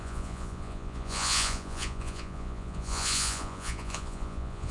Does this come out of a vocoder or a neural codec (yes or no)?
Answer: yes